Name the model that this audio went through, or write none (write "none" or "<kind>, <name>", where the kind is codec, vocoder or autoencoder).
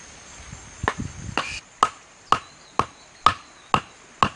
none